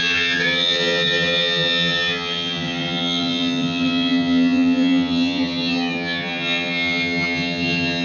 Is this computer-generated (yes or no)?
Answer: yes